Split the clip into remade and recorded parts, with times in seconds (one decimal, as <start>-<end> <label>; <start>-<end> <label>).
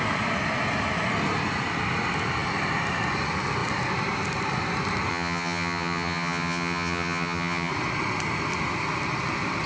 0.0-5.1 recorded; 5.1-7.7 remade; 7.7-9.7 recorded